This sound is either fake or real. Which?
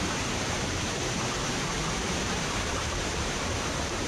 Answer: fake